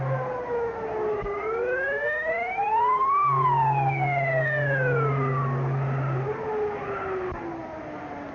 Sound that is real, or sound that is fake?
real